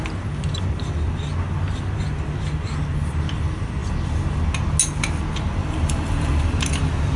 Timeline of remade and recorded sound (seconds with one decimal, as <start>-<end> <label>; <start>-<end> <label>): 0.0-5.6 recorded; 5.6-6.4 remade; 6.4-7.2 recorded